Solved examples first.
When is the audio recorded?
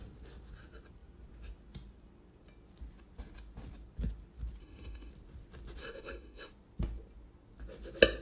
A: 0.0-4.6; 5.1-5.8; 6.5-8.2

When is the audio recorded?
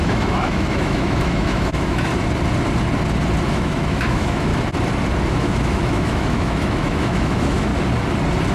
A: 2.1-3.5; 4.5-5.3; 7.7-8.5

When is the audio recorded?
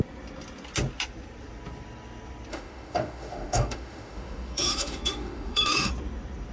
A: 0.0-2.5; 5.9-6.5